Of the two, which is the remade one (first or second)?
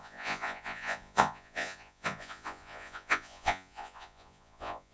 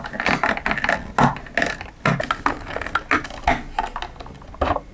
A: first